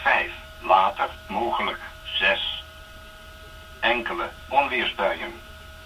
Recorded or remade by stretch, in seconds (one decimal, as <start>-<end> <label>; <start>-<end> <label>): 0.0-2.1 remade; 2.1-4.1 recorded; 4.1-5.9 remade